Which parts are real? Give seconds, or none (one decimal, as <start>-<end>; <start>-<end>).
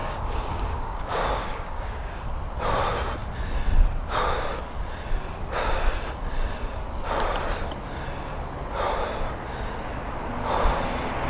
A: 2.2-11.3